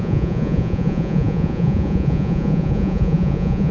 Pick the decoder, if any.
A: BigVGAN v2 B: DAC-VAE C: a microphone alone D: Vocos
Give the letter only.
D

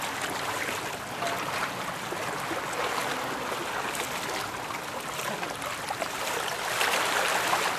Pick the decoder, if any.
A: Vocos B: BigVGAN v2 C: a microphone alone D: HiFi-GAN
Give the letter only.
C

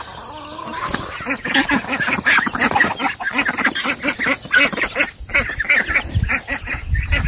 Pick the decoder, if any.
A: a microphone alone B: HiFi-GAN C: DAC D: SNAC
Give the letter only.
A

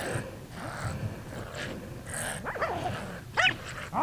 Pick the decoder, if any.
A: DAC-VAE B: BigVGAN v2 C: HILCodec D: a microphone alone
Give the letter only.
D